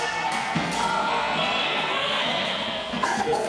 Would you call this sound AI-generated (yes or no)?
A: yes